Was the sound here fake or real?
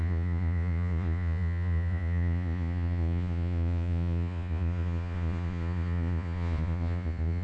fake